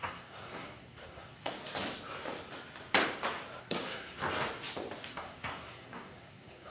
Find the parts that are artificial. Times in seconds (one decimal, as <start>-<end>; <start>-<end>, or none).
0.0-1.6; 3.6-4.2; 5.1-6.7